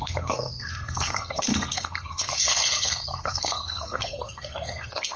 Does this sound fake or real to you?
fake